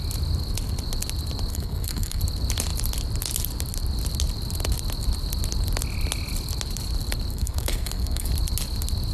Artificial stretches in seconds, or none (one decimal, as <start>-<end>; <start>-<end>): 1.5-2.2; 7.3-8.3

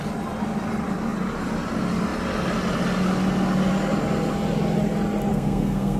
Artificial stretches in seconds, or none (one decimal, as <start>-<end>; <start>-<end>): 5.3-6.0

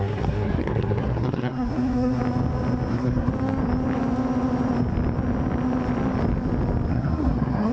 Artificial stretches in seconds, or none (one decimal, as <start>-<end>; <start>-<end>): 0.0-2.2; 2.9-3.3; 6.9-7.7

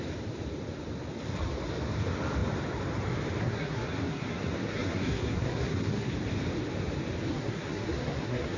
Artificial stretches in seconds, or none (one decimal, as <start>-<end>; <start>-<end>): 3.4-6.1; 7.3-8.6

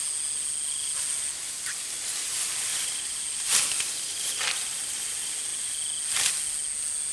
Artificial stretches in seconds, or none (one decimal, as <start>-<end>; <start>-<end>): none

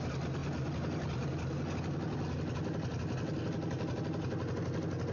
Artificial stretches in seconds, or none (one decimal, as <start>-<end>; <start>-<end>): none

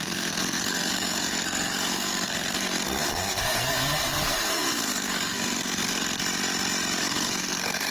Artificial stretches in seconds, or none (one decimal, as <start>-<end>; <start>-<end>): 0.0-6.2; 7.0-7.9

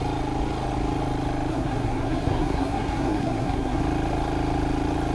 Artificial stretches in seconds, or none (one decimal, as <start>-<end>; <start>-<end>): 1.5-3.8